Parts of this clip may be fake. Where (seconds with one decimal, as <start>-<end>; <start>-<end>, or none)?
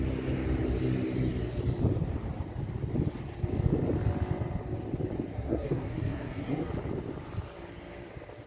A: 5.3-6.7